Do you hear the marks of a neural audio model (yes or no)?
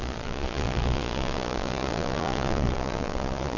yes